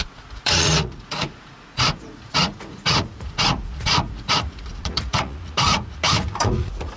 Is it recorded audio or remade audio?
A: remade